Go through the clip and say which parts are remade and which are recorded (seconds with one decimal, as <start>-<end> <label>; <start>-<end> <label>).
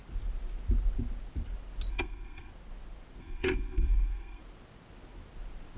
0.0-1.9 recorded; 1.9-2.5 remade; 2.5-3.2 recorded; 3.2-4.4 remade; 4.4-5.8 recorded